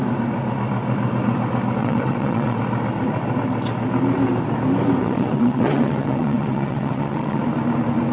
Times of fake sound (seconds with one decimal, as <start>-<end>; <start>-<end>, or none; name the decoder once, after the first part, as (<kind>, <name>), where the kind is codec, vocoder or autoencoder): 1.8-2.6 (vocoder, WaveNeXt); 5.0-7.4